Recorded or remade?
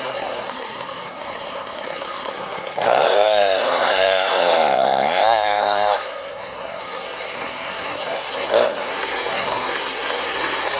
remade